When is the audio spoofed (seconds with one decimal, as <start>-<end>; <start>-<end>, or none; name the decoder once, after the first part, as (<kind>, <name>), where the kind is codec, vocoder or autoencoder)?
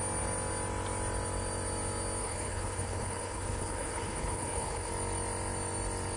2.2-4.9 (codec, HILCodec)